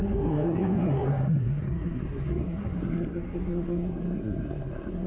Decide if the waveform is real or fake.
fake